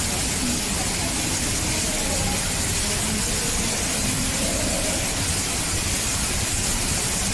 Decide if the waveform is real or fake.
real